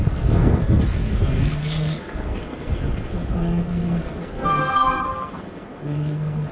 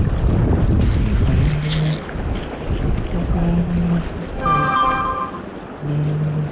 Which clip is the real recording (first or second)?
second